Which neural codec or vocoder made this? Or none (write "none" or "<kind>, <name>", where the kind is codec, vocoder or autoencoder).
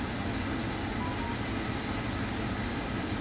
none